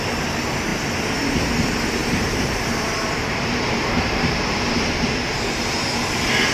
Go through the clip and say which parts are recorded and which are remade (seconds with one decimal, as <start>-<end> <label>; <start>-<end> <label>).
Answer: 0.0-2.0 recorded; 2.0-5.6 remade; 5.6-6.5 recorded